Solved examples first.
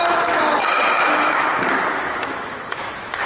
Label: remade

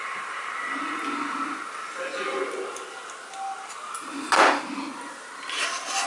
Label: recorded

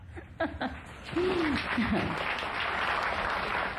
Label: recorded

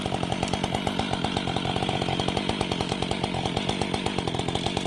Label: recorded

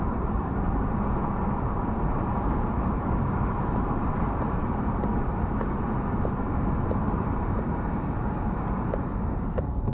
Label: remade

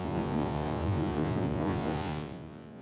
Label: remade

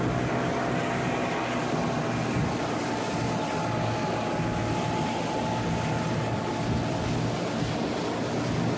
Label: recorded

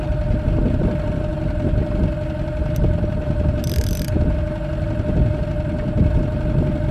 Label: recorded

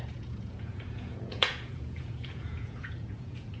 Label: remade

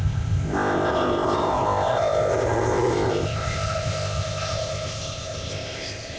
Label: remade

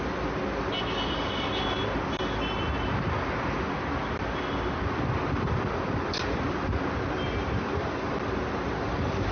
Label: recorded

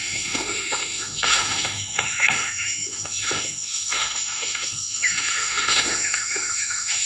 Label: remade